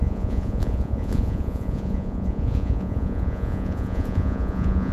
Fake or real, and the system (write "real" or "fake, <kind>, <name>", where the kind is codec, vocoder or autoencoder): fake, vocoder, Vocos